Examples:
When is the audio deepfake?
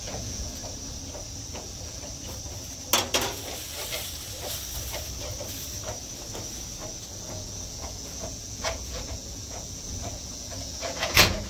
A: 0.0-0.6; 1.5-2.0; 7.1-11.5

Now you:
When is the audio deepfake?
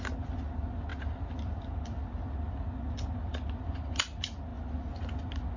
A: none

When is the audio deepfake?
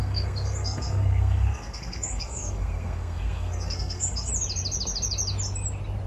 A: 0.0-4.3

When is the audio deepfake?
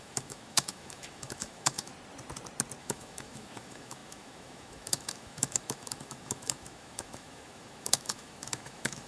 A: 0.0-1.9; 2.8-9.1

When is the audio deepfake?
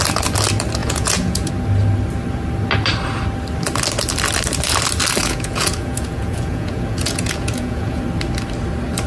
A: 0.8-1.5; 5.2-8.0